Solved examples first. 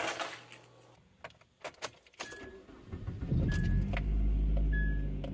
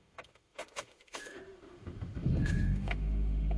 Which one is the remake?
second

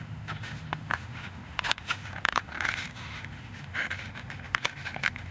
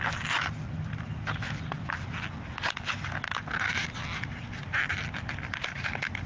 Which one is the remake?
first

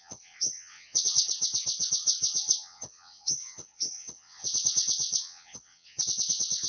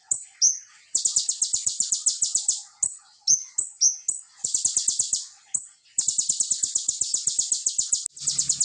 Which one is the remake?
first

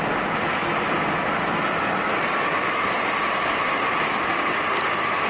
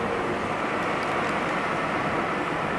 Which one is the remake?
first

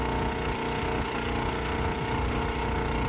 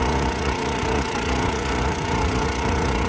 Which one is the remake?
second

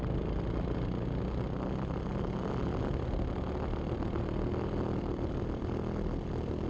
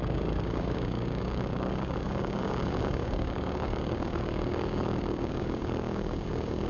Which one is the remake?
second